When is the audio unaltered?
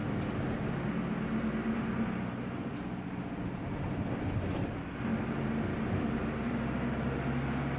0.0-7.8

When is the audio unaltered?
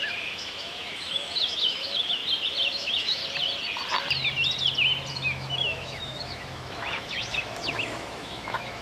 2.2-2.7; 3.2-5.1